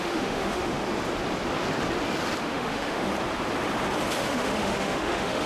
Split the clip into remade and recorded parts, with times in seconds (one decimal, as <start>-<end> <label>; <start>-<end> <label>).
0.0-0.8 remade; 0.8-2.4 recorded; 2.4-3.1 remade; 3.1-4.2 recorded; 4.2-5.5 remade